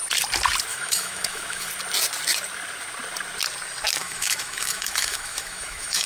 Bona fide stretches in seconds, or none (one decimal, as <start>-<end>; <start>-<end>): 0.0-0.7; 1.7-4.0